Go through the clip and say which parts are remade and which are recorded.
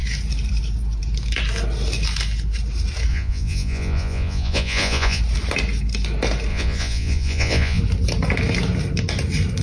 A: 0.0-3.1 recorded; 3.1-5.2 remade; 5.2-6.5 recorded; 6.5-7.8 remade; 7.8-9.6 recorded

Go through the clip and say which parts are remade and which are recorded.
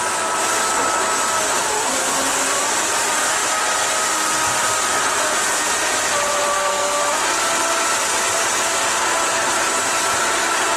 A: 0.0-6.5 recorded; 6.5-7.0 remade; 7.0-10.8 recorded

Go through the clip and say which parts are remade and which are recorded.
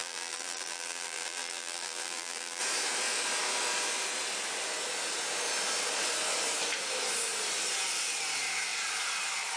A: 0.0-2.6 remade; 2.6-9.6 recorded